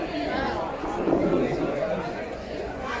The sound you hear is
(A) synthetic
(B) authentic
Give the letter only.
A